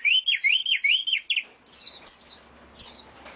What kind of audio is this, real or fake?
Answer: real